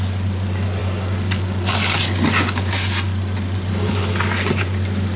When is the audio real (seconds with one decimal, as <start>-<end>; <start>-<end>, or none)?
0.0-5.2